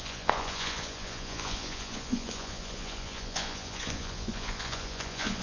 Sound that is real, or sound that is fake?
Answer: fake